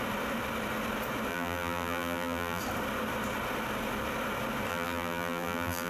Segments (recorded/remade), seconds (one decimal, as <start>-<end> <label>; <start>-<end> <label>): 0.0-1.3 recorded; 1.3-2.6 remade; 2.6-4.7 recorded; 4.7-5.9 remade